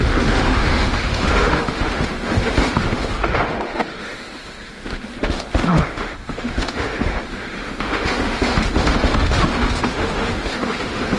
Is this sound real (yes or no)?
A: no